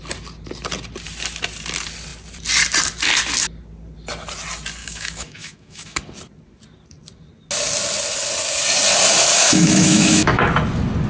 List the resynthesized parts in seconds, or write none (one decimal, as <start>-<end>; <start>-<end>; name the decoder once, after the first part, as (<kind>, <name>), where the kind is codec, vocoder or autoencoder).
4.8-6.0 (autoencoder, DAC-VAE); 9.3-10.4